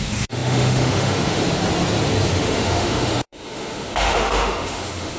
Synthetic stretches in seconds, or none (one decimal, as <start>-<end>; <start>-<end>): 0.0-1.4; 2.3-5.2